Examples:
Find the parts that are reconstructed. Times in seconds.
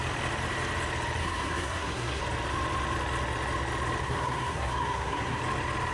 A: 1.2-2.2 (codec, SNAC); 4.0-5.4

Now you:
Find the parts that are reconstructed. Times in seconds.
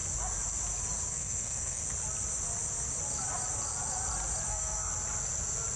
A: 1.1-1.8 (codec, SNAC); 4.5-4.9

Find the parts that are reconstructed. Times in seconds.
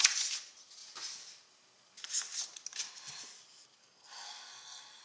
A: 3.8-5.0 (codec, SNAC)